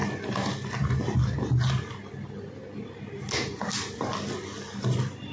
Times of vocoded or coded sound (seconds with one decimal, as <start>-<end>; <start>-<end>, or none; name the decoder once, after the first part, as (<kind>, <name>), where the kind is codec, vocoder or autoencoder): none